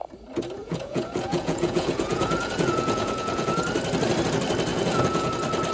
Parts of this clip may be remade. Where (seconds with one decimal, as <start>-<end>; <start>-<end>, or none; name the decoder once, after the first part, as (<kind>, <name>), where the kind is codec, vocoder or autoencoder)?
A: 0.6-3.6 (vocoder, Vocos); 4.7-5.3